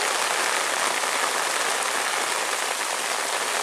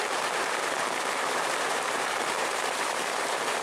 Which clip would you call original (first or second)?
first